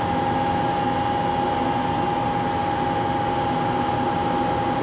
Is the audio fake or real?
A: real